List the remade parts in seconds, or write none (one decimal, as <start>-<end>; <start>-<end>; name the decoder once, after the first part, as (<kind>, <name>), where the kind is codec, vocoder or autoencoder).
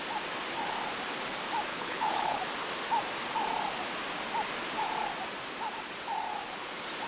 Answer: 1.7-2.4 (codec, HILCodec)